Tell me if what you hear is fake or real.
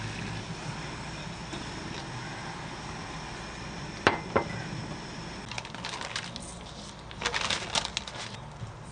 real